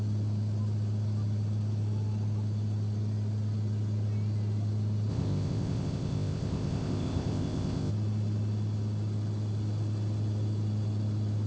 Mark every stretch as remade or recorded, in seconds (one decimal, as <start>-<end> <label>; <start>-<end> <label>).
0.0-5.1 recorded; 5.1-7.9 remade; 7.9-11.5 recorded